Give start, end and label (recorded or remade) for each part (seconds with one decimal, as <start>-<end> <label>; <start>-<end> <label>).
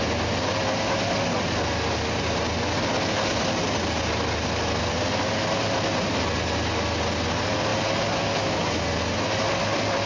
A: 0.0-10.1 recorded